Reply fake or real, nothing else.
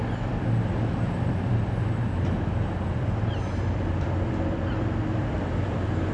fake